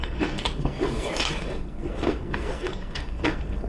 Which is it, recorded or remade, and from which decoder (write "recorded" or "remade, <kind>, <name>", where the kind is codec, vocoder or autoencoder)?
remade, codec, SNAC